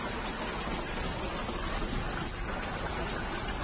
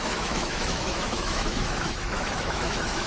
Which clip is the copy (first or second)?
second